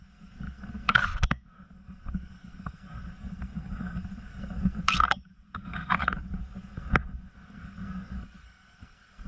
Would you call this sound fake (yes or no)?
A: yes